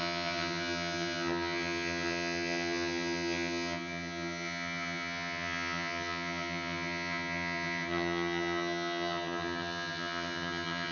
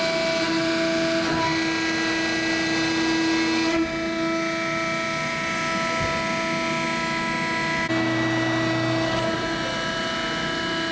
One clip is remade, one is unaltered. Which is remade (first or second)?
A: first